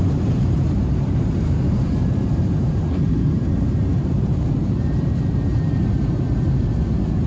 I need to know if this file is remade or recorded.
remade